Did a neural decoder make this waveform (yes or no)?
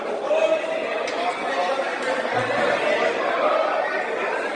no